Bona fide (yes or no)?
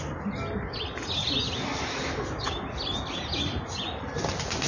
yes